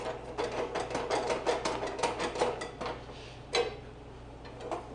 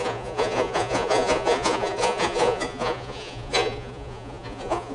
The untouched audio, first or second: first